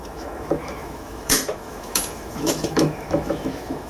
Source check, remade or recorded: remade